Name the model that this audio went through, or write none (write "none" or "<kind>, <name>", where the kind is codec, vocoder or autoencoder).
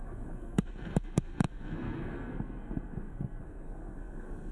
codec, SNAC